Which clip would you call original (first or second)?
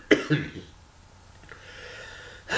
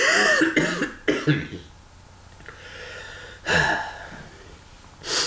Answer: second